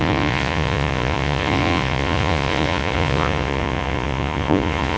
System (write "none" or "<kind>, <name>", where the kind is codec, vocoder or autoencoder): vocoder, Vocos